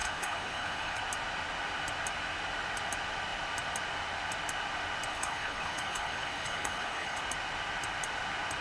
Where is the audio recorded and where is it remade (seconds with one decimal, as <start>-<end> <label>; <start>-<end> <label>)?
0.0-1.0 remade; 1.0-5.1 recorded; 5.1-7.2 remade; 7.2-8.6 recorded